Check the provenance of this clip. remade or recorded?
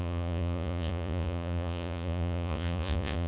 remade